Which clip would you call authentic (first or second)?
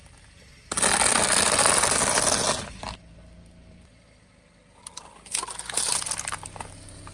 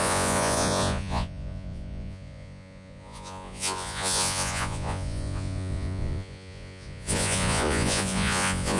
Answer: first